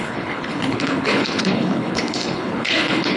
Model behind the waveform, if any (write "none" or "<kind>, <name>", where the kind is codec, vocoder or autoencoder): codec, HILCodec